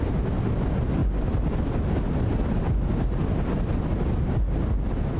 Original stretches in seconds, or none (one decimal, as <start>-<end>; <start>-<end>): 0.0-5.2